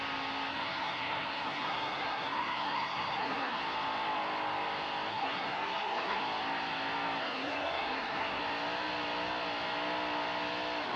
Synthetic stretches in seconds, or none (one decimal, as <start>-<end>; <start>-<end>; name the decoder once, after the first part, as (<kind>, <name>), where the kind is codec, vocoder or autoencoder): 0.5-3.6 (codec, SNAC); 5.1-6.2; 7.2-8.4